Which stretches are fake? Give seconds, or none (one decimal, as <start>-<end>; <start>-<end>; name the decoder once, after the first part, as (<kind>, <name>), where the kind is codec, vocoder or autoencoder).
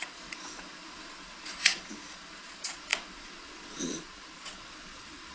0.0-5.3 (vocoder, Vocos)